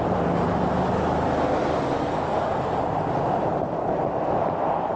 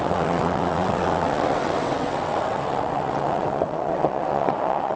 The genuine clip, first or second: first